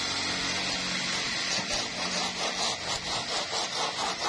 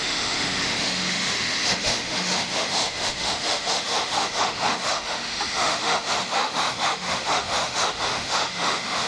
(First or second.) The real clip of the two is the first